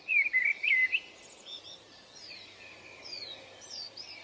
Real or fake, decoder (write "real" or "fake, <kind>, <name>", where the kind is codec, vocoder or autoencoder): fake, vocoder, BigVGAN v2